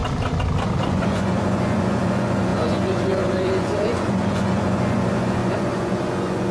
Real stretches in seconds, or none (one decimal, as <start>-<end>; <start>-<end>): 0.0-0.9